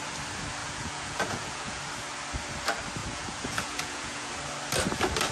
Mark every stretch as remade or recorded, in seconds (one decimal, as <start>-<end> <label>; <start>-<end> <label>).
0.0-0.6 recorded; 0.6-1.8 remade; 1.8-3.0 recorded; 3.0-4.3 remade; 4.3-5.3 recorded